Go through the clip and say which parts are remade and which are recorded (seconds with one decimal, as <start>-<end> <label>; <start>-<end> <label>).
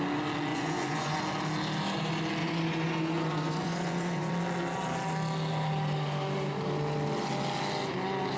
0.0-0.5 recorded; 0.5-1.2 remade; 1.2-2.4 recorded; 2.4-4.3 remade; 4.3-8.4 recorded